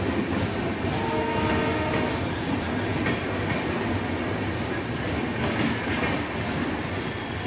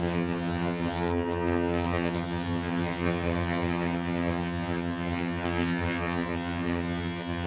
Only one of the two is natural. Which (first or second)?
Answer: first